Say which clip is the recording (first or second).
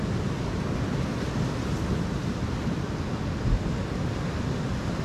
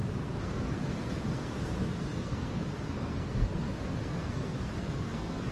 first